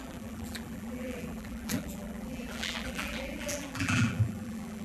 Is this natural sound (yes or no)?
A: no